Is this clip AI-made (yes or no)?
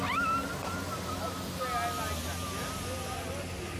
no